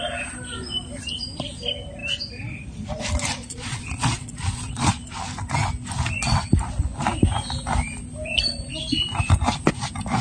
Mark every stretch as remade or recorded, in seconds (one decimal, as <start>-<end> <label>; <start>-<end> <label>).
0.0-3.4 recorded; 3.4-4.9 remade; 4.9-10.2 recorded